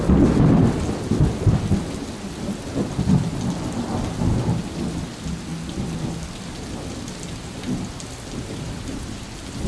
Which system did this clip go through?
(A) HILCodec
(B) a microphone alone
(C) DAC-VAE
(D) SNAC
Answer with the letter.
B